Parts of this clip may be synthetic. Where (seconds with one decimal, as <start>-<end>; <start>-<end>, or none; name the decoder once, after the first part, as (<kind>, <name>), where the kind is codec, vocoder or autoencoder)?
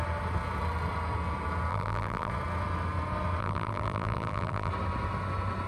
1.7-2.3 (vocoder, BigVGAN v2); 3.4-4.7